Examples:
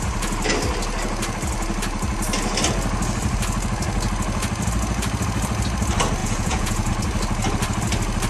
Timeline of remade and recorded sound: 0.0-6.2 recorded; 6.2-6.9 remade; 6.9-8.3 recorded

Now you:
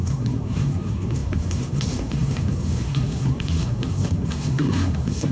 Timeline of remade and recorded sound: 0.0-5.3 remade

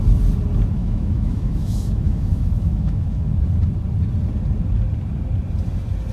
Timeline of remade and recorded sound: 0.0-0.8 recorded; 0.8-3.2 remade; 3.2-6.1 recorded

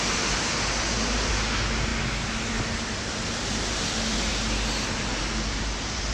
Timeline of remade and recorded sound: 0.0-6.1 recorded

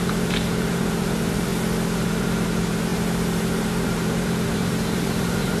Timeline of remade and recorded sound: 0.0-1.5 remade; 1.5-2.0 recorded; 2.0-5.6 remade